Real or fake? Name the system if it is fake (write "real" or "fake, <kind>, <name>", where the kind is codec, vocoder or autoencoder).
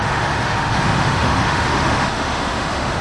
fake, autoencoder, DAC-VAE